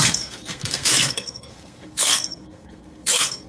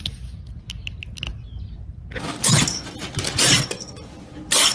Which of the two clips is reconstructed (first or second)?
first